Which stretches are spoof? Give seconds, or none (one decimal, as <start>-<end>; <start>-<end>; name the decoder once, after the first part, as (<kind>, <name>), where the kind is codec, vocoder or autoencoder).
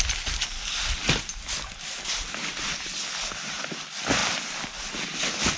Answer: none